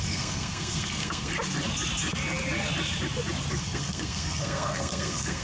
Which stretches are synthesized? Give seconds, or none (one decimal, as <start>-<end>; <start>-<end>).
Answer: 0.0-1.3; 3.6-5.4